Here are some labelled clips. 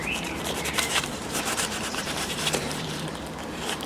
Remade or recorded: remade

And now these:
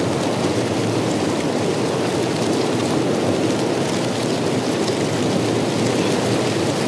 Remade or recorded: recorded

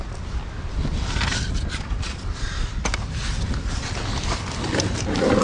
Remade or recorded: recorded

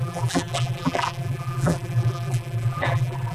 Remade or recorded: remade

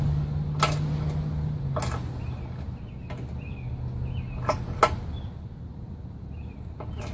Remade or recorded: recorded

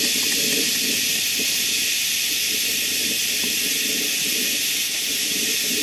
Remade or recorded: recorded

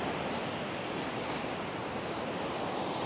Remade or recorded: recorded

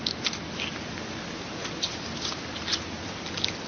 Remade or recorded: recorded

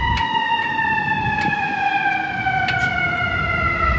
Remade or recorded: recorded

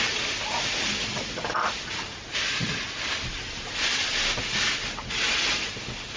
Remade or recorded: recorded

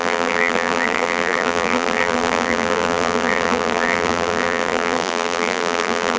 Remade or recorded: remade